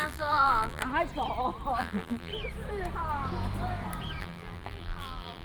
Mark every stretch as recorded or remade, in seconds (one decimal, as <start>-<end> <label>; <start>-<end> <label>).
0.0-0.8 remade; 0.8-1.8 recorded; 1.8-2.3 remade; 2.3-4.2 recorded; 4.2-5.4 remade